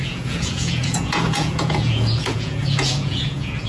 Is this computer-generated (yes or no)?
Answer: yes